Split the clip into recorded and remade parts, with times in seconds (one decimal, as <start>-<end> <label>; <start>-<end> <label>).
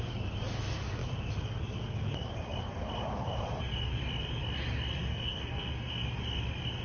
0.0-5.1 recorded; 5.1-5.7 remade; 5.7-6.8 recorded